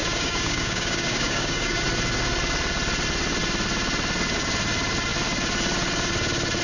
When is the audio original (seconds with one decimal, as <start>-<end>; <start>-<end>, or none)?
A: 1.8-6.6